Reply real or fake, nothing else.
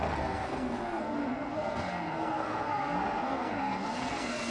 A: fake